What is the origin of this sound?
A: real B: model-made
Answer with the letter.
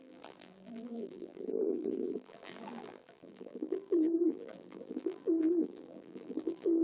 B